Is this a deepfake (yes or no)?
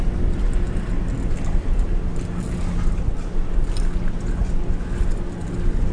no